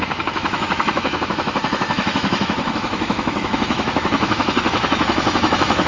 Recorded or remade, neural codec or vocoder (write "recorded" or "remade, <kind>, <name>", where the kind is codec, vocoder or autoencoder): remade, autoencoder, DAC-VAE